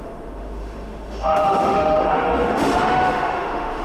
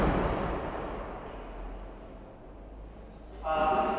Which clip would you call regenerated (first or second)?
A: first